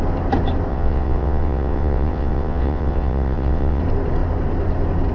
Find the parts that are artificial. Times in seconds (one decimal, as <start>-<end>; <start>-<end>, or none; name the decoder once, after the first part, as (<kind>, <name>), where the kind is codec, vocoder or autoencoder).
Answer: 0.7-3.8 (vocoder, WaveNeXt)